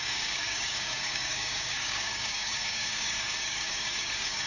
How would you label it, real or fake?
fake